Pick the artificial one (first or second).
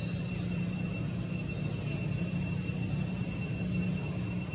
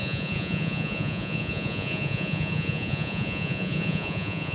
second